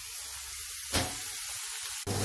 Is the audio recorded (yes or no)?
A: yes